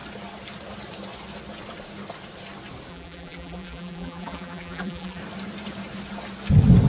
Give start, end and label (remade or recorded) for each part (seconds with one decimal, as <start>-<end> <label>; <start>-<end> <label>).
0.0-2.9 recorded; 2.9-5.2 remade; 5.2-6.9 recorded